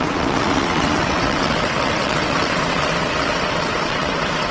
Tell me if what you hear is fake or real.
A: fake